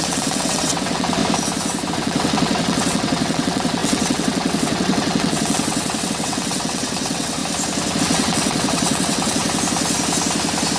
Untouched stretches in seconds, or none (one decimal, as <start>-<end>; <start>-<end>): 1.2-1.9; 7.4-8.0; 9.4-10.8